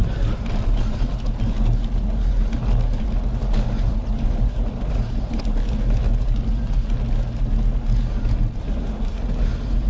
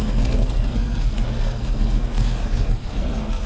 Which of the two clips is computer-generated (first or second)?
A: second